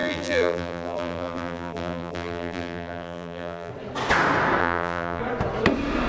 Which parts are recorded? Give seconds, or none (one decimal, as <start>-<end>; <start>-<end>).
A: 3.7-4.6; 5.2-6.1